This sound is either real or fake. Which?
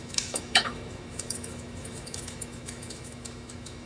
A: fake